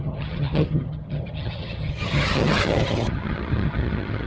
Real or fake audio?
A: fake